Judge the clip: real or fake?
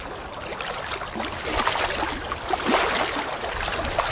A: real